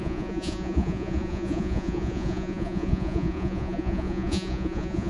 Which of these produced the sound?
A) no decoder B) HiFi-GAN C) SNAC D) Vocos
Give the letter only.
D